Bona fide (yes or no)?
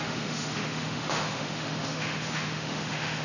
no